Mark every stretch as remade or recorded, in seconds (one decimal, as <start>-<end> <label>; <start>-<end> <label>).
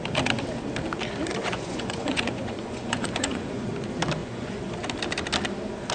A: 0.0-1.3 recorded; 1.3-3.7 remade; 3.7-4.2 recorded; 4.2-4.7 remade; 4.7-5.9 recorded